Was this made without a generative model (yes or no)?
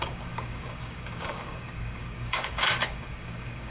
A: no